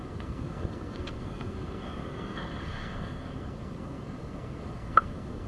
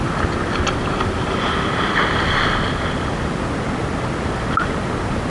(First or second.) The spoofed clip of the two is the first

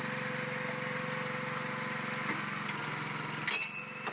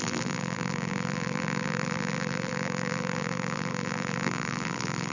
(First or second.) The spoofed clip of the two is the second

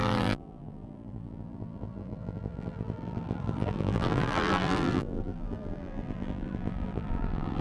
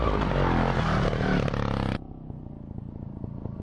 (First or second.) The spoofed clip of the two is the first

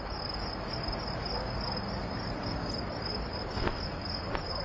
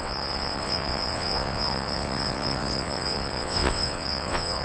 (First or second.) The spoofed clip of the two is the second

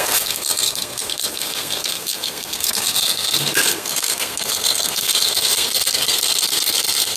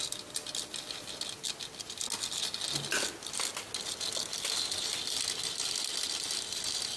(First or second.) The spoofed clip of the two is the first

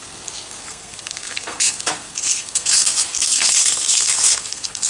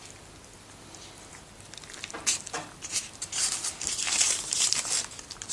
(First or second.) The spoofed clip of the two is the first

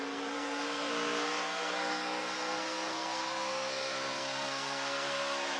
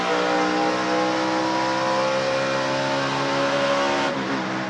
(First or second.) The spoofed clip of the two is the first